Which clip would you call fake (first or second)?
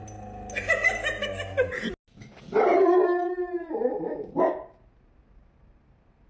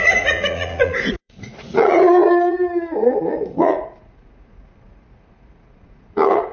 second